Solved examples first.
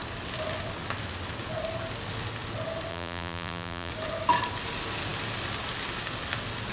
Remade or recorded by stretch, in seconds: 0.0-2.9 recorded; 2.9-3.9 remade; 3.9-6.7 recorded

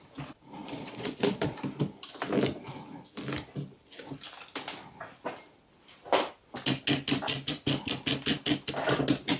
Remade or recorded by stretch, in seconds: 0.0-0.6 recorded; 0.6-1.6 remade; 1.6-9.4 recorded